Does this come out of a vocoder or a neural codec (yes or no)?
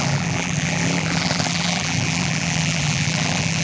yes